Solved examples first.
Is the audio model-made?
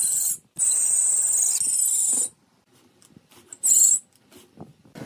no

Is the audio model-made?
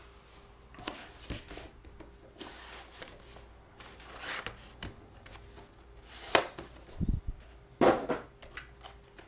no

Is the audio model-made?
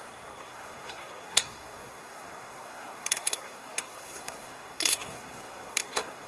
yes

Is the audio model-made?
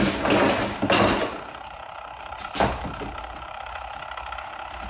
no